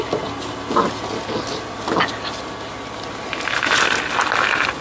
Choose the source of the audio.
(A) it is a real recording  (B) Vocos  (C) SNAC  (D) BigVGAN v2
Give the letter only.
A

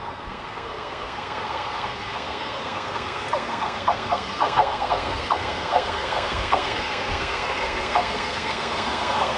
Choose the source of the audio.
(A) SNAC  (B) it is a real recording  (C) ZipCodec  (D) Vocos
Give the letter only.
A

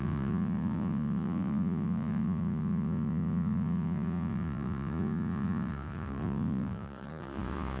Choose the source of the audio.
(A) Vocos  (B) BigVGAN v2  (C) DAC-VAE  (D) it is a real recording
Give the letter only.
A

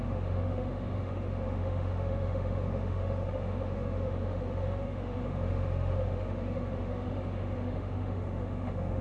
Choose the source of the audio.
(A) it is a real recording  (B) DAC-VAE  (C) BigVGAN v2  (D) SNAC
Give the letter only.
B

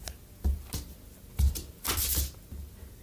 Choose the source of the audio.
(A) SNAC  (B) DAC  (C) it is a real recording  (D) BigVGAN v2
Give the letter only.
C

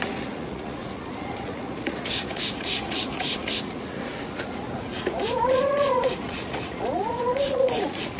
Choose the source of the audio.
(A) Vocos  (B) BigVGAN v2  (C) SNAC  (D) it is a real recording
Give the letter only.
A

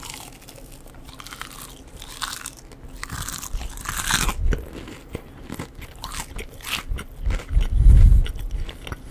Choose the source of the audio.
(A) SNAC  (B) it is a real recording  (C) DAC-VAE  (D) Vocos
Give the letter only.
B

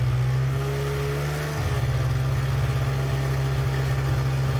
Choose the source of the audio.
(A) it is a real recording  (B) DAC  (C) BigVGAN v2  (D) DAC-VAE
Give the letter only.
A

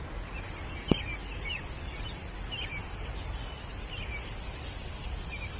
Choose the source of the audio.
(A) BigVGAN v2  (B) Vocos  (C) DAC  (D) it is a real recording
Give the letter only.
D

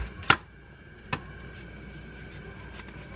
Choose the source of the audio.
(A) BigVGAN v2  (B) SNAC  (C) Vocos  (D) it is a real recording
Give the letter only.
D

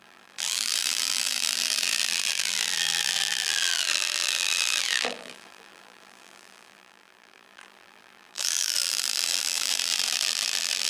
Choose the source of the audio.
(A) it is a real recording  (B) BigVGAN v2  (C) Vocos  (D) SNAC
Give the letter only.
B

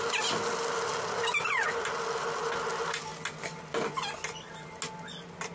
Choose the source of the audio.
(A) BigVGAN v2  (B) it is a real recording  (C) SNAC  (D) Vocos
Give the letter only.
B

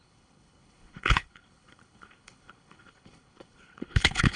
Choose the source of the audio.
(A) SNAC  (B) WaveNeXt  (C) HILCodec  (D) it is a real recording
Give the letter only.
C